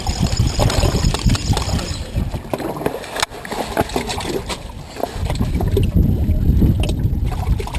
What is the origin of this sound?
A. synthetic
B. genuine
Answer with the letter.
B